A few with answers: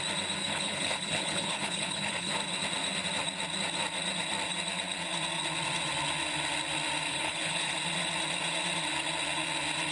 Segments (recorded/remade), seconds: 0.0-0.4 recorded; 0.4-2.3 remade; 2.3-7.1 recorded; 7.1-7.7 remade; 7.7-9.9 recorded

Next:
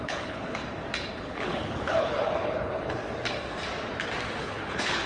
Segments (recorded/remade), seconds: 0.0-0.6 remade; 0.6-1.2 recorded; 1.2-3.0 remade; 3.0-4.4 recorded; 4.4-5.1 remade

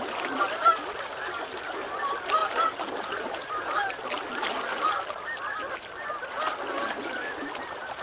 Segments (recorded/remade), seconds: 0.0-8.0 recorded

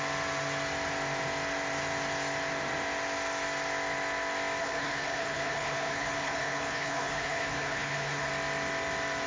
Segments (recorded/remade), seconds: 0.0-4.6 recorded; 4.6-8.3 remade; 8.3-9.3 recorded

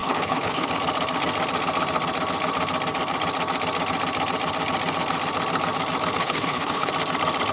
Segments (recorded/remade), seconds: 0.0-0.7 remade; 0.7-6.2 recorded; 6.2-6.9 remade; 6.9-7.5 recorded

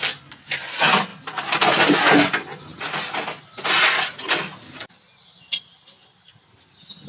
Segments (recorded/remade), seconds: 0.0-7.1 recorded

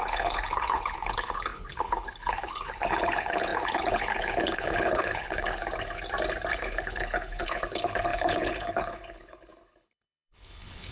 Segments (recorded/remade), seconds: 0.0-5.6 remade; 5.6-6.5 recorded; 6.5-10.9 remade